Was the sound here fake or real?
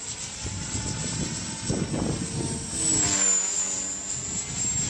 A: real